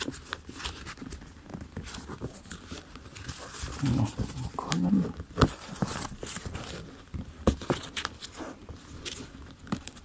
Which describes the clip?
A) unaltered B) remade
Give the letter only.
A